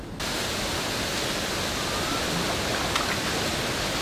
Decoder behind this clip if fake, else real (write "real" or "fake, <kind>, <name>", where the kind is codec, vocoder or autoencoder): real